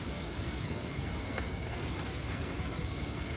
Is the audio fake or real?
fake